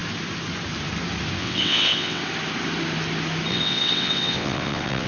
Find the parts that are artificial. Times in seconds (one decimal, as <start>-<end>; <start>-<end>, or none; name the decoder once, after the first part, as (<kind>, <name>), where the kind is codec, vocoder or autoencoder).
1.4-2.2 (vocoder, WaveNeXt); 3.5-5.1